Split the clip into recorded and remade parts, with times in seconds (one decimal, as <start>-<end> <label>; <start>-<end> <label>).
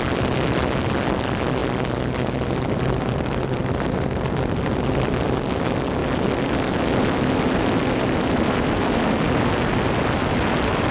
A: 0.0-10.9 recorded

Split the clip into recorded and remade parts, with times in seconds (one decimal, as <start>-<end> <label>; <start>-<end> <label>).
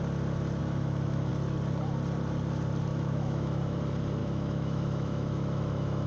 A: 0.0-0.6 recorded; 0.6-1.3 remade; 1.3-2.9 recorded; 2.9-3.8 remade; 3.8-4.2 recorded; 4.2-6.1 remade